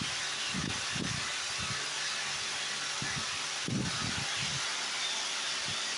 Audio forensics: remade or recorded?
recorded